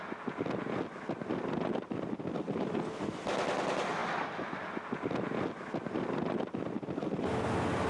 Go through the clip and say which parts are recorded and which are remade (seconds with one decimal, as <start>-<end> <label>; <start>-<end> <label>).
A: 0.0-7.9 recorded